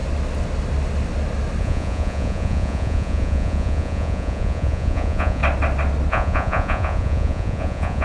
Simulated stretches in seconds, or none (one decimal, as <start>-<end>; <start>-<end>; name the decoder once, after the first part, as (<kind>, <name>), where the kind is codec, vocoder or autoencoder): 1.6-5.4 (vocoder, Vocos); 6.1-8.0